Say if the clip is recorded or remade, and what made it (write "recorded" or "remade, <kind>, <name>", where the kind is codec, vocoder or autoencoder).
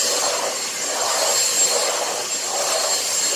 recorded